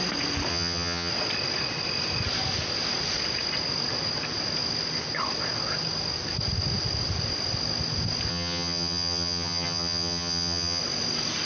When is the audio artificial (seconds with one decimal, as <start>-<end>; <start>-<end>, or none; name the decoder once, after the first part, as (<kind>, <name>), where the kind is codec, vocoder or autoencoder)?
0.5-1.1 (vocoder, HiFi-GAN); 8.3-10.8